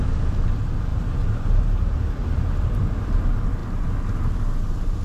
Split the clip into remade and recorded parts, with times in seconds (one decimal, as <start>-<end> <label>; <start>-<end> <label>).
0.0-0.9 recorded; 0.9-1.6 remade; 1.6-2.2 recorded; 2.2-2.9 remade; 2.9-5.0 recorded